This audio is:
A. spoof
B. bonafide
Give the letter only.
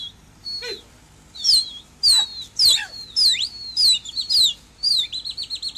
B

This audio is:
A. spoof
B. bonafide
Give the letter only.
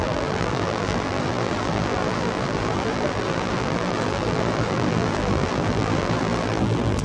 A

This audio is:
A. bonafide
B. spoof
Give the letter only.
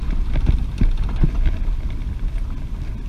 A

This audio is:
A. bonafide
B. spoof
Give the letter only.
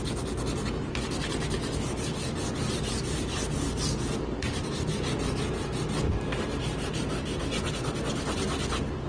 A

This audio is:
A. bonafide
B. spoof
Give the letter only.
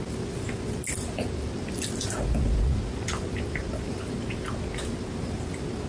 A